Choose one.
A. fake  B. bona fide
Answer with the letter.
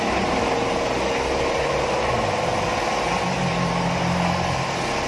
B